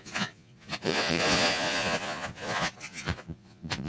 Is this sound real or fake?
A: fake